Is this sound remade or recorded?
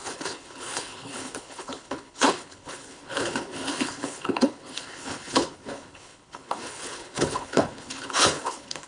remade